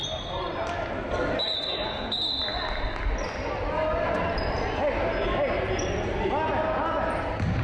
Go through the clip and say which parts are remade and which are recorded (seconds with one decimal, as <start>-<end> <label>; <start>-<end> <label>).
0.0-7.6 recorded